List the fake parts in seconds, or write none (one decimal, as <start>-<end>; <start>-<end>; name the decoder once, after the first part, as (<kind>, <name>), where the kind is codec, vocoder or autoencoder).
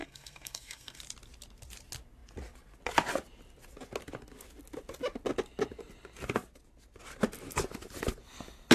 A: 0.0-1.0 (codec, SNAC)